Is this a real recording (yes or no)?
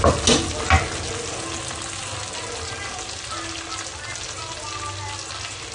yes